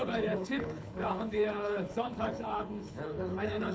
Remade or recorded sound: remade